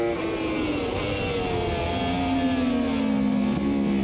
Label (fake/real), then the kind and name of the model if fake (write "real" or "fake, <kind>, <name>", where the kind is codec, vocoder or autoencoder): real